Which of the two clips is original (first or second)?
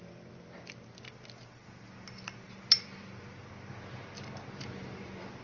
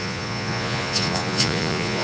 first